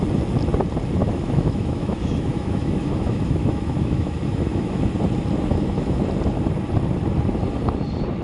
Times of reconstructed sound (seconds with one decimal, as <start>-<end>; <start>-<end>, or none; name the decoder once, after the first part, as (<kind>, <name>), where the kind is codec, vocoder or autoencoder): 1.0-4.8 (autoencoder, DAC-VAE); 5.5-6.0